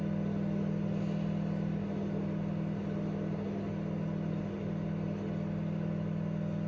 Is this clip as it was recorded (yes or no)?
yes